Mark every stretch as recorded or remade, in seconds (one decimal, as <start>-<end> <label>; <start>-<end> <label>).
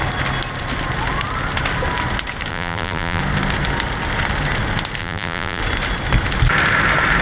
0.0-2.5 recorded; 2.5-3.2 remade; 3.2-5.0 recorded; 5.0-5.6 remade; 5.6-7.2 recorded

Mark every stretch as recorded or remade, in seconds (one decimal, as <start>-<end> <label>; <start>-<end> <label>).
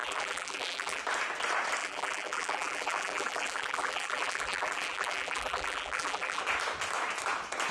0.0-1.0 remade; 1.0-1.8 recorded; 1.8-6.4 remade; 6.4-7.7 recorded